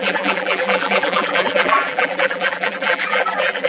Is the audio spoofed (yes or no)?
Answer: yes